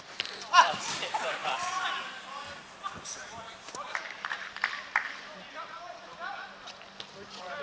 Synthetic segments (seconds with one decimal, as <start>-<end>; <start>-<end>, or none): 1.4-2.3; 4.0-4.5

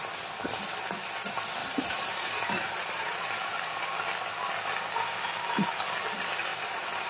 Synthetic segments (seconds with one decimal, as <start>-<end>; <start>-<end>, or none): 1.6-3.6; 6.5-7.1